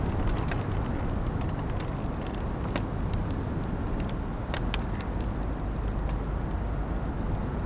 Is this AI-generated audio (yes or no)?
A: no